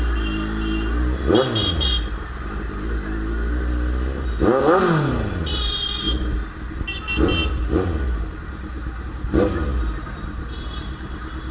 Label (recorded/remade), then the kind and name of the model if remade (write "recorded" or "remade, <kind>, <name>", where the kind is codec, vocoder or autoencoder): recorded